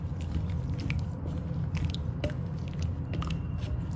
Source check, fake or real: real